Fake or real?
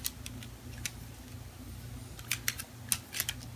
real